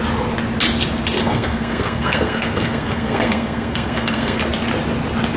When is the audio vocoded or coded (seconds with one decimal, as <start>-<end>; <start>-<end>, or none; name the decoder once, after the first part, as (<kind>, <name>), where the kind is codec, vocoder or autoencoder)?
1.2-4.4 (codec, SNAC)